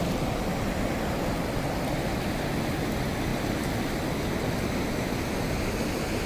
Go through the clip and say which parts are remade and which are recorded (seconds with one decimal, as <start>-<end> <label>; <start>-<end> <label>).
0.0-6.3 recorded